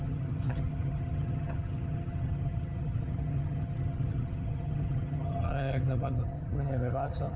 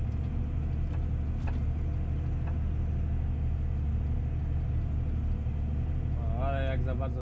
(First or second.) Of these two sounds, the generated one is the first